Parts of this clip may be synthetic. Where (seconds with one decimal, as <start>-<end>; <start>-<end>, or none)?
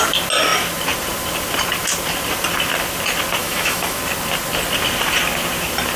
3.4-4.0